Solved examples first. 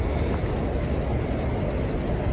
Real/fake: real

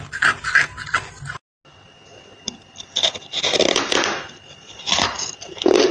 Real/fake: real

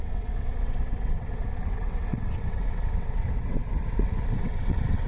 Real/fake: fake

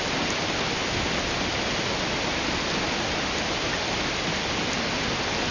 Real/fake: real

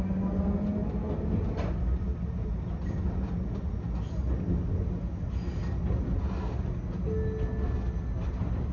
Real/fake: real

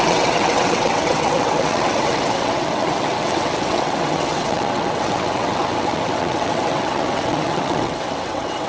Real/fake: fake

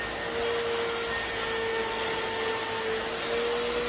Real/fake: real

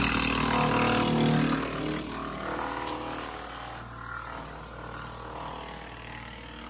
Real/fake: real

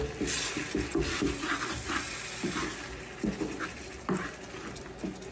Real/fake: real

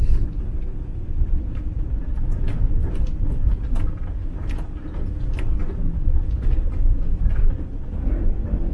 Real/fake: real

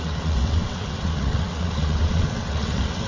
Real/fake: fake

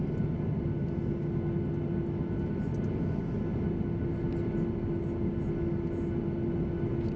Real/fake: real